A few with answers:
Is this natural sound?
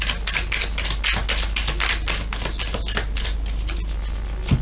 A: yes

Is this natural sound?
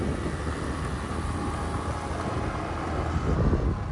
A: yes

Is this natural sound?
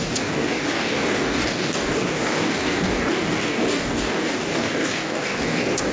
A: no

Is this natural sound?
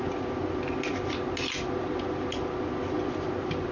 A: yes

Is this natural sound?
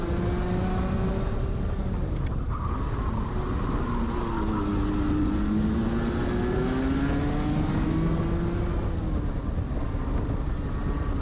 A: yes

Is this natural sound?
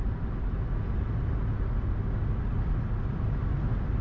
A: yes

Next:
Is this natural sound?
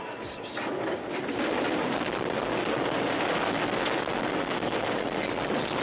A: yes